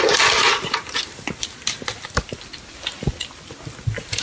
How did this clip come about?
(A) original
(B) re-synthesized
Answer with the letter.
A